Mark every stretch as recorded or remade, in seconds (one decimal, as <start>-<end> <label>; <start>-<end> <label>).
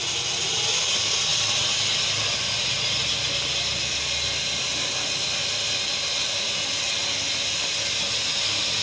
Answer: 0.0-8.8 recorded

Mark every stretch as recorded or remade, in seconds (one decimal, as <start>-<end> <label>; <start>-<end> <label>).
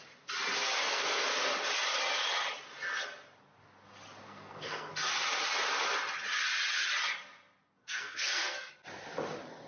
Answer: 0.0-0.8 recorded; 0.8-1.4 remade; 1.4-4.2 recorded; 4.2-4.9 remade; 4.9-7.8 recorded; 7.8-8.7 remade; 8.7-9.7 recorded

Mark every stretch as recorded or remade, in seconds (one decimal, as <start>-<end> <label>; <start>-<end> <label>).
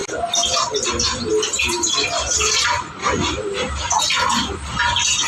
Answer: 0.0-5.3 recorded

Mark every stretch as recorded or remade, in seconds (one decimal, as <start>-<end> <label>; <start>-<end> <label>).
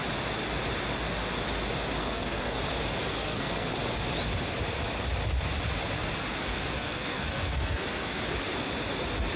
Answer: 0.0-2.0 recorded; 2.0-2.6 remade; 2.6-3.1 recorded; 3.1-3.7 remade; 3.7-6.4 recorded; 6.4-8.2 remade; 8.2-9.4 recorded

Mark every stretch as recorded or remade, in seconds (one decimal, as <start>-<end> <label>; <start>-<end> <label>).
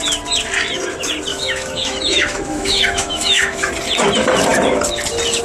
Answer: 0.0-1.3 recorded; 1.3-3.7 remade; 3.7-5.4 recorded